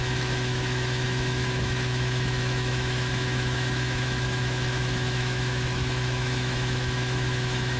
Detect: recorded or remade remade